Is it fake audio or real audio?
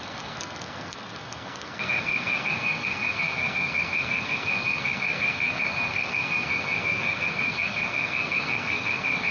fake